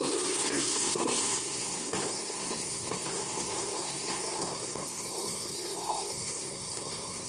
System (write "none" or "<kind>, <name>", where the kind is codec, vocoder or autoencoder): codec, SNAC